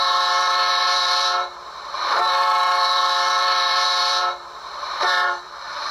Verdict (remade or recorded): remade